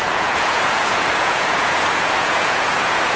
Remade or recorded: remade